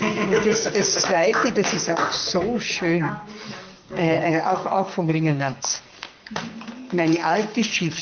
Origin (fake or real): fake